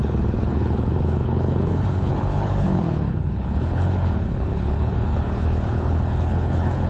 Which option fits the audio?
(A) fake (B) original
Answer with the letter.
A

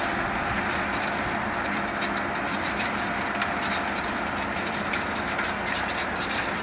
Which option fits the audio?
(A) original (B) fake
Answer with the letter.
A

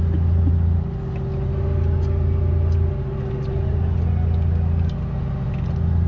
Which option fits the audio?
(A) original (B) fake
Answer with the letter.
A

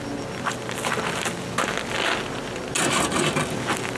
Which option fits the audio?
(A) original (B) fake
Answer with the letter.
A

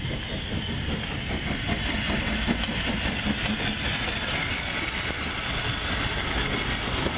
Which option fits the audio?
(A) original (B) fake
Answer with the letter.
A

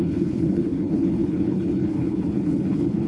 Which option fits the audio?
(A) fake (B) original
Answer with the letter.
A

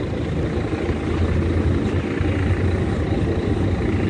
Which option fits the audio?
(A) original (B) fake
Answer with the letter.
A